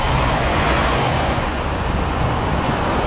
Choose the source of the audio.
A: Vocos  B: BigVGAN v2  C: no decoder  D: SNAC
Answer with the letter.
A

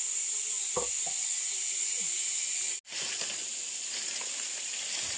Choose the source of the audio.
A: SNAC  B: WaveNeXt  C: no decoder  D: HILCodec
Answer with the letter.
C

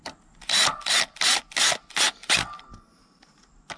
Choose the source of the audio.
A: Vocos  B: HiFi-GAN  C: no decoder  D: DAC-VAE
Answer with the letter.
C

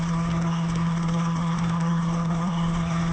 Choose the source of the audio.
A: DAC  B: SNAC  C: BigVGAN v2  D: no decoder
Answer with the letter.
B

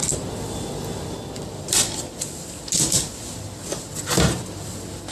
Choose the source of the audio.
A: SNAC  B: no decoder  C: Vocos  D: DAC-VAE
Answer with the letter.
B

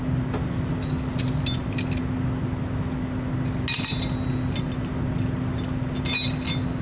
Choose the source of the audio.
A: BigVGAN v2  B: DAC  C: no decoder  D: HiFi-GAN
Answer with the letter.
C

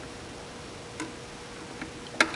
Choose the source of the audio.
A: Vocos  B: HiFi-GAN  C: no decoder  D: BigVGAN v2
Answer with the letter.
C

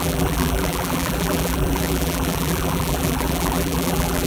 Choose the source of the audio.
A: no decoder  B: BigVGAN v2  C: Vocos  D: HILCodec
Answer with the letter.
B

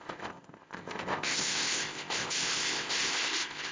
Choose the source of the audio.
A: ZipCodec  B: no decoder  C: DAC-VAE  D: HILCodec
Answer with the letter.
A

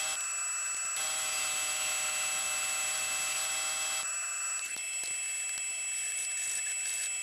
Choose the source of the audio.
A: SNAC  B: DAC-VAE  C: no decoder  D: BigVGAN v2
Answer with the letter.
C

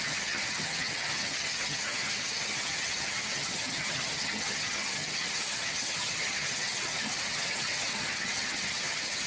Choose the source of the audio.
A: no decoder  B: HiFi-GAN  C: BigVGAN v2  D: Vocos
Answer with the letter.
B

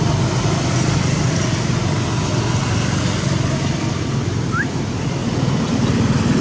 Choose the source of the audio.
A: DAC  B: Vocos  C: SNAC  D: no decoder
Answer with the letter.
D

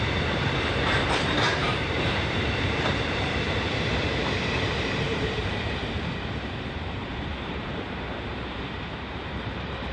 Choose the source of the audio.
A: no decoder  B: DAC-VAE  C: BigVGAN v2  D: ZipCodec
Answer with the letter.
C